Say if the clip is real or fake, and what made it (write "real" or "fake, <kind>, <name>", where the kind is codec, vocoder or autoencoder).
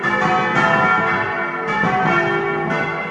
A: real